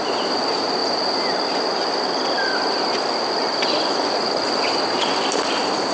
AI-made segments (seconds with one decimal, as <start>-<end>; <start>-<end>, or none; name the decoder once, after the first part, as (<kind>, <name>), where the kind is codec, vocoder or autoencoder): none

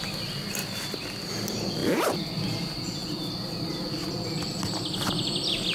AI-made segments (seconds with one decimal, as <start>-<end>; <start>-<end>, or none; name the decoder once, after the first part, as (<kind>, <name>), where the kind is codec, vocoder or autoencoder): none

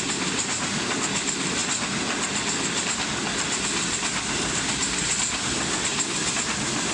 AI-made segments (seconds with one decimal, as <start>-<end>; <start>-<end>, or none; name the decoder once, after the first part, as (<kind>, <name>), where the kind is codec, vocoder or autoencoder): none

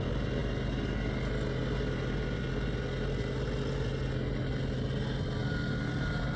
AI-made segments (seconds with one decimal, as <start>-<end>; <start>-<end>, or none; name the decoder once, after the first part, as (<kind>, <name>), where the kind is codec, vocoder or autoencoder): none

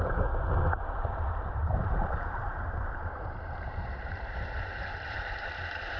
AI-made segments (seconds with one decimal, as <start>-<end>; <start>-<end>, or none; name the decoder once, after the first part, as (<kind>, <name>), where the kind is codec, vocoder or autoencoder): 1.6-5.2 (vocoder, BigVGAN v2)

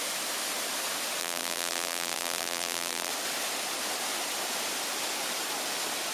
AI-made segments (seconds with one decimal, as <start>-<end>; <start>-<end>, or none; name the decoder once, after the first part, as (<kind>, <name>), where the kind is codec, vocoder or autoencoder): 1.2-3.1 (vocoder, BigVGAN v2)

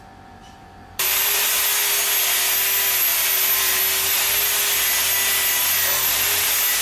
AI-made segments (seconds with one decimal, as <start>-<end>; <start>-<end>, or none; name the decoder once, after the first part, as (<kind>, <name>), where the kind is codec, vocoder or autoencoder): 0.4-1.6 (vocoder, BigVGAN v2); 3.1-3.8

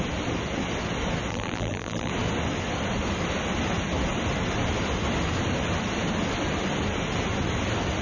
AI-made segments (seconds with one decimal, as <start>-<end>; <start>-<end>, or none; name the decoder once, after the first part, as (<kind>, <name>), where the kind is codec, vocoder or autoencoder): 1.3-2.1 (vocoder, BigVGAN v2)